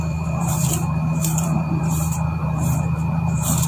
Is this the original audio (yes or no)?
no